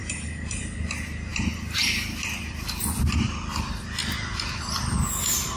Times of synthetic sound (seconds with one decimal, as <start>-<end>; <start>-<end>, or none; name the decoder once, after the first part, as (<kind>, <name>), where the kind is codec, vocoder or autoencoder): none